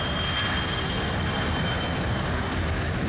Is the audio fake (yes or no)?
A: no